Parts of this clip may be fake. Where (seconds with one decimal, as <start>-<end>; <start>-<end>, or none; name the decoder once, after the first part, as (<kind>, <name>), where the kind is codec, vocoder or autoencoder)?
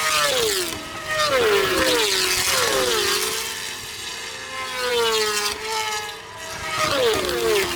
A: none